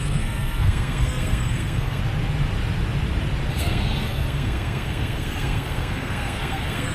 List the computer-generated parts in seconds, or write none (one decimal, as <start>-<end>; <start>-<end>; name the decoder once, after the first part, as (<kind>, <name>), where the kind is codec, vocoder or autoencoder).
0.0-2.0 (codec, SNAC); 3.5-6.9